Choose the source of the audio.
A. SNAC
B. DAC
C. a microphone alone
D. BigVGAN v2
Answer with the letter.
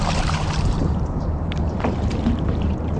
D